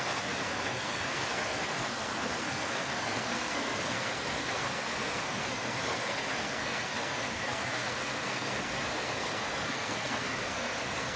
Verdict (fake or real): fake